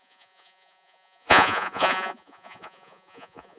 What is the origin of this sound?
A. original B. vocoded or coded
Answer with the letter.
B